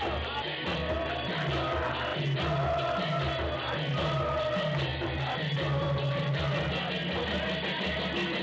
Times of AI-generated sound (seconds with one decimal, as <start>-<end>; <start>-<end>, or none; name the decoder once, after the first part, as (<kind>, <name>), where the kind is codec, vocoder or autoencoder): none